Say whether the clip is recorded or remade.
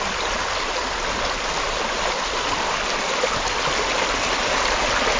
recorded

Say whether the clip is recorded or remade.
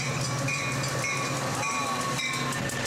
recorded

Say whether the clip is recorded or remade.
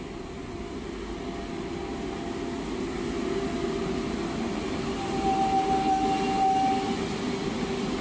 recorded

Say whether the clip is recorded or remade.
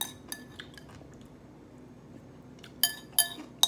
recorded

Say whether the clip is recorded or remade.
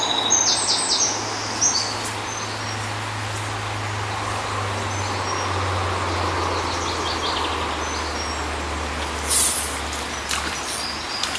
recorded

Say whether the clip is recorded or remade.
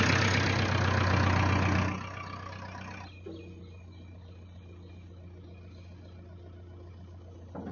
recorded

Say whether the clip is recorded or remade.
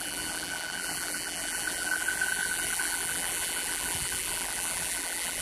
remade